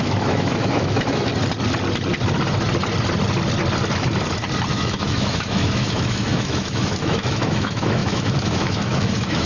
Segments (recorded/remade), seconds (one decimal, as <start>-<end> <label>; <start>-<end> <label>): 0.0-1.3 remade; 1.3-4.7 recorded; 4.7-9.5 remade